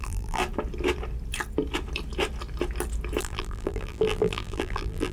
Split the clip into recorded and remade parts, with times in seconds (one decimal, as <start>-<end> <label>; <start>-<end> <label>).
0.0-0.4 remade; 0.4-3.2 recorded; 3.2-5.1 remade